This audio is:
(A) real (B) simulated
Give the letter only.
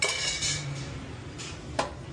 A